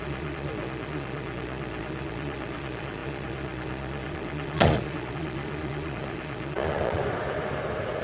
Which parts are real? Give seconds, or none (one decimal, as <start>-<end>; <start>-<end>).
7.0-8.0